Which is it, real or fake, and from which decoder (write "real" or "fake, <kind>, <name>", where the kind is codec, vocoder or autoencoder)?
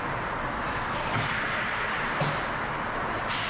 real